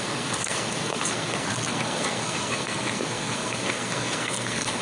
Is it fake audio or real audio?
fake